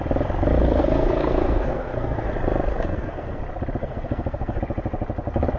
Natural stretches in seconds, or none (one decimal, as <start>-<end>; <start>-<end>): 0.0-0.6; 2.3-2.7; 3.4-3.8; 4.6-5.6